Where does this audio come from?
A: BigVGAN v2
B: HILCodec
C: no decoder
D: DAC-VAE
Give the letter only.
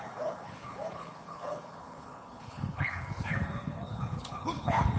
B